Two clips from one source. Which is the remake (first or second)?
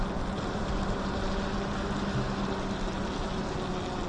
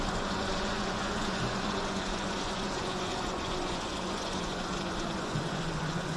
second